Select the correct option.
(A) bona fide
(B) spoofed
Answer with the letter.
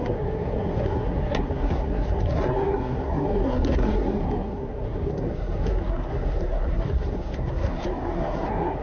B